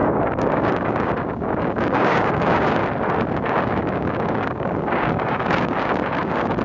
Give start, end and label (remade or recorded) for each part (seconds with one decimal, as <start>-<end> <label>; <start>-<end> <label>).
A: 0.0-2.8 remade; 2.8-3.3 recorded; 3.3-6.6 remade